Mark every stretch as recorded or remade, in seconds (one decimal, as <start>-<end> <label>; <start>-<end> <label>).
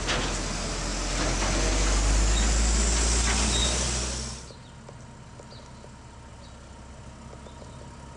0.0-8.2 recorded